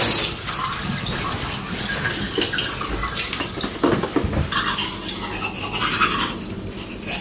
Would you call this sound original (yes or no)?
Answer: yes